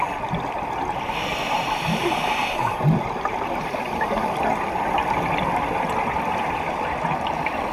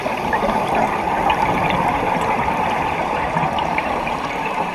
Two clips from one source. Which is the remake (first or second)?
second